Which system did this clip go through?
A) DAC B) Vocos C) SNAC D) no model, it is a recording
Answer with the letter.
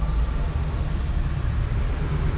D